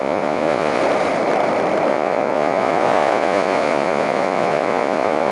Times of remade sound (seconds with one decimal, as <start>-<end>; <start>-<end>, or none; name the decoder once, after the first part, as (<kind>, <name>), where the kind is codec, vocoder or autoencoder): 0.0-0.8 (vocoder, Vocos); 1.9-5.3

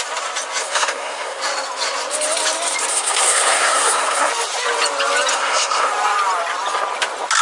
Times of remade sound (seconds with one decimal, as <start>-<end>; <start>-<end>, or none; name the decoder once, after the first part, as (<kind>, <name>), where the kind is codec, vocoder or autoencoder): 0.6-1.4 (codec, SNAC); 2.9-4.3; 5.3-5.9

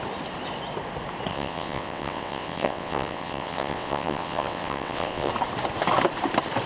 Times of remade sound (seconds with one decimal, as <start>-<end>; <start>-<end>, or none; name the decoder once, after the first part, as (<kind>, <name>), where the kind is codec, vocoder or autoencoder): 1.3-5.3 (vocoder, WaveNeXt)

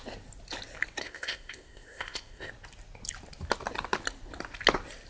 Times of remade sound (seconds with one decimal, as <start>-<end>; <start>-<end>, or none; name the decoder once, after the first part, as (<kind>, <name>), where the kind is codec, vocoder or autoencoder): 1.0-2.5 (codec, ZipCodec)

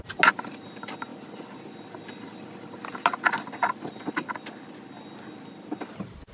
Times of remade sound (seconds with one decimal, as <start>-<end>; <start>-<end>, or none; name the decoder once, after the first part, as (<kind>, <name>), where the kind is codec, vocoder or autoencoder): none

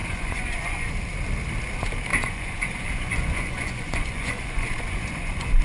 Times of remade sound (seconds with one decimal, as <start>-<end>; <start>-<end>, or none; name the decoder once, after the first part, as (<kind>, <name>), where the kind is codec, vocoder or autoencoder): 0.0-0.9 (vocoder, Vocos); 2.1-5.6